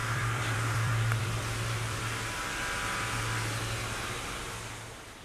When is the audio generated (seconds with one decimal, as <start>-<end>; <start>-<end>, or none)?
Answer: 0.0-2.0